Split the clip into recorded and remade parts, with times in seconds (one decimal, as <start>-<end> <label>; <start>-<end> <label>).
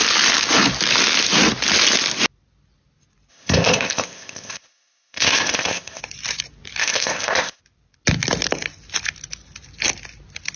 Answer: 0.0-3.3 recorded; 3.3-6.0 remade; 6.0-6.8 recorded; 6.8-7.6 remade; 7.6-10.6 recorded